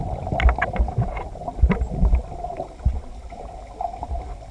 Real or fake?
real